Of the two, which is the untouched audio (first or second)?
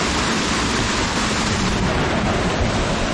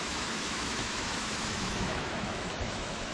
first